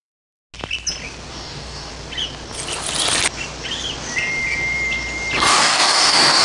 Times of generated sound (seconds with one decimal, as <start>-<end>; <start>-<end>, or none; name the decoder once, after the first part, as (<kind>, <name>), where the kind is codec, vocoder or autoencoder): 0.0-0.4 (codec, DAC); 1.3-1.9; 5.5-6.4